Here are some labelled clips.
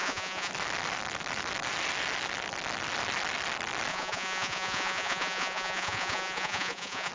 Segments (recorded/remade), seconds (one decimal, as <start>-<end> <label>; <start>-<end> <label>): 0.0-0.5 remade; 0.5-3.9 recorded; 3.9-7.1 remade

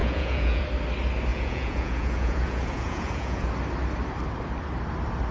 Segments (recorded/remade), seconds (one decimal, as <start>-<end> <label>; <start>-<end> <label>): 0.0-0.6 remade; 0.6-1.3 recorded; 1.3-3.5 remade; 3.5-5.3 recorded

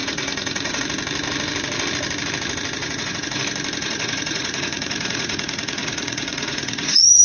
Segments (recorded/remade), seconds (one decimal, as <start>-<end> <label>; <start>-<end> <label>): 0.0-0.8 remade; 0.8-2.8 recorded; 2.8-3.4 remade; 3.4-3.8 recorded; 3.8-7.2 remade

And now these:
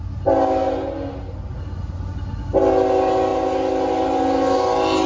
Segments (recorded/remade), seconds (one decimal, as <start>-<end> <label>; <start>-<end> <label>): 0.0-5.1 recorded

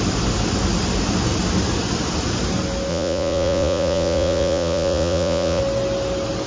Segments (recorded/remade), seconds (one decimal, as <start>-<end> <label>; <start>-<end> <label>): 0.0-2.9 recorded; 2.9-5.6 remade; 5.6-6.5 recorded

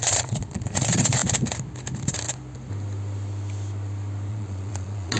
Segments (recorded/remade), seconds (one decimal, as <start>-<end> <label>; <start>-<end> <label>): 0.0-1.2 remade; 1.2-4.3 recorded; 4.3-5.2 remade

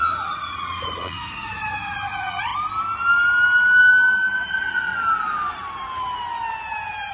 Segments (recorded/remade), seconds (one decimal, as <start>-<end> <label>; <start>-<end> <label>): 0.0-2.5 remade; 2.5-4.5 recorded; 4.5-4.9 remade; 4.9-7.1 recorded